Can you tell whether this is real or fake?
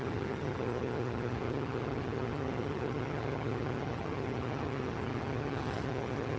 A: fake